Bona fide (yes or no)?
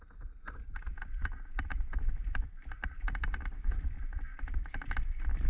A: yes